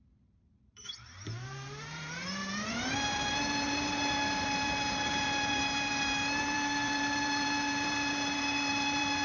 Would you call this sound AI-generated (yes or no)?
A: yes